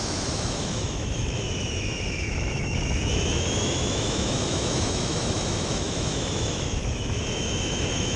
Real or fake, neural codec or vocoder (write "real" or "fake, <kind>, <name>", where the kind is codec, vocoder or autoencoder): fake, autoencoder, DAC-VAE